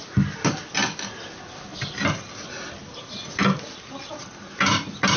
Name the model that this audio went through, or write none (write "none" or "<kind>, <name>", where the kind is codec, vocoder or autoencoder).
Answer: none